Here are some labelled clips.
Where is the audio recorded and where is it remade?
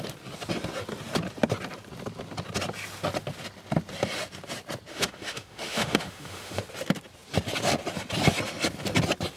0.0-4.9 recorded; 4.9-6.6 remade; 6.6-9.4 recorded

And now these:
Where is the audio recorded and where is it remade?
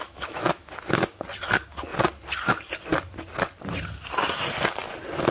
0.0-1.2 remade; 1.2-5.3 recorded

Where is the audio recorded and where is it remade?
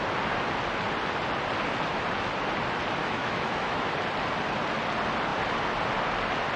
0.0-3.0 recorded; 3.0-3.9 remade; 3.9-6.6 recorded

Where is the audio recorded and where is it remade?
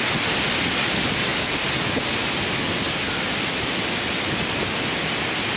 0.0-5.6 recorded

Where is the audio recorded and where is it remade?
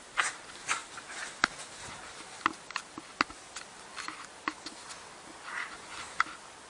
0.0-6.7 recorded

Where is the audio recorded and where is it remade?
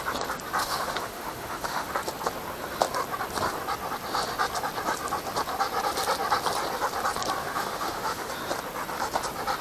0.0-0.6 recorded; 0.6-1.9 remade; 1.9-7.4 recorded; 7.4-8.3 remade; 8.3-9.6 recorded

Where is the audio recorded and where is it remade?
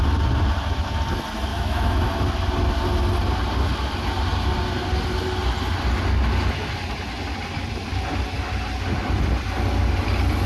0.0-1.5 recorded; 1.5-2.0 remade; 2.0-10.5 recorded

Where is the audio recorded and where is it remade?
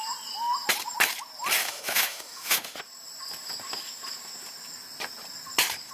0.0-1.6 recorded; 1.6-2.8 remade; 2.8-5.9 recorded